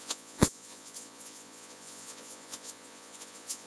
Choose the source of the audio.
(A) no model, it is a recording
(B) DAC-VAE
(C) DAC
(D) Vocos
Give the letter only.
D